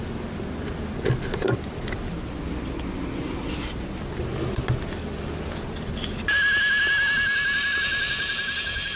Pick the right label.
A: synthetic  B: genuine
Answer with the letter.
B